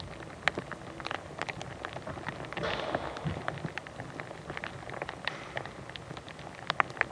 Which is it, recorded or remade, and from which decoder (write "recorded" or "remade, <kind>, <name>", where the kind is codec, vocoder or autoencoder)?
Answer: recorded